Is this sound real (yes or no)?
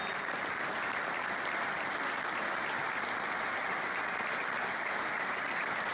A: yes